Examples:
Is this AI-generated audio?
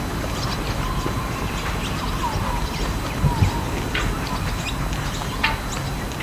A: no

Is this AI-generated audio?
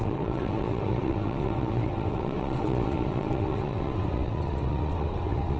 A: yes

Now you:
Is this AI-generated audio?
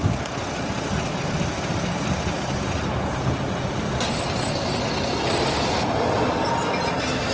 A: no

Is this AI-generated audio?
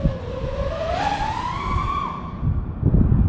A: no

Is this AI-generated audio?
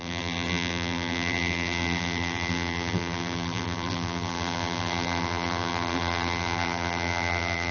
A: yes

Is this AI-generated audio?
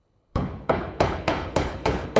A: yes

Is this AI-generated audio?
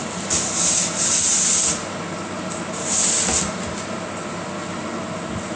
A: no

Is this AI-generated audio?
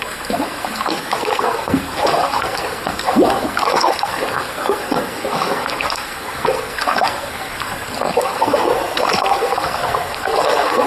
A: yes